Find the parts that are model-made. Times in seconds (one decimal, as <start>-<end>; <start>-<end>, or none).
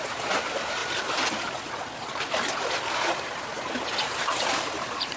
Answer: 0.0-0.8; 3.1-3.5; 4.0-5.2